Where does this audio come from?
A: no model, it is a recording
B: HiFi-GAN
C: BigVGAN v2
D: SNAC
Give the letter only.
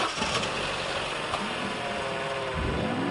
A